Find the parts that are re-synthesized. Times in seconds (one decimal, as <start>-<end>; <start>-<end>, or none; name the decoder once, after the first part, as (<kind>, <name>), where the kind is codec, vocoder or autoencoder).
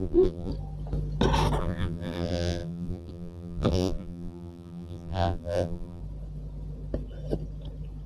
0.0-0.5 (vocoder, BigVGAN v2); 1.6-6.0